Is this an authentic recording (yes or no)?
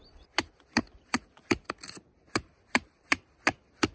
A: yes